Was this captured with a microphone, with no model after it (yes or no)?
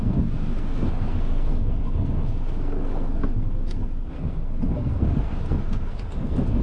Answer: no